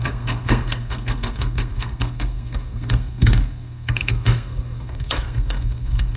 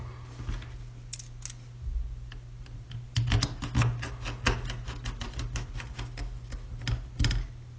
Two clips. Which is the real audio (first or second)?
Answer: second